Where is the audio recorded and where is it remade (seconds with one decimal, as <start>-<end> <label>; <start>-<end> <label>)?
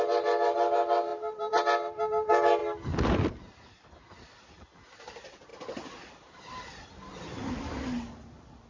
0.0-1.1 recorded; 1.1-1.6 remade; 1.6-8.7 recorded